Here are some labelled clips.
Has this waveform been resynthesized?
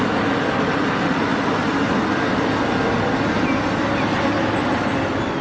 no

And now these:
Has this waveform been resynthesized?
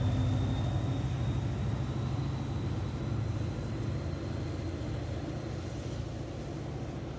no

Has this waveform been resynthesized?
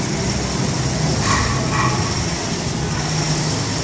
no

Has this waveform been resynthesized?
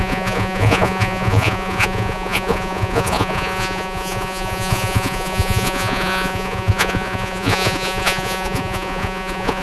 yes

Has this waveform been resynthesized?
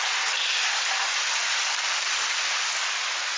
no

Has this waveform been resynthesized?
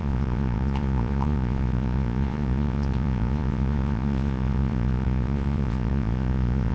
yes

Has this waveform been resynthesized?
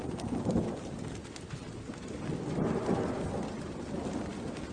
no